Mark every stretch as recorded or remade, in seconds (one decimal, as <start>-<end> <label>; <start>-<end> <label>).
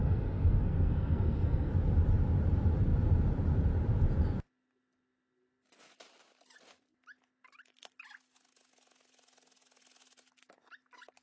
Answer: 0.0-1.7 remade; 1.7-11.2 recorded